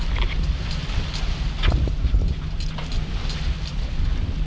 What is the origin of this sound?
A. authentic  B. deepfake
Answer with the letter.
A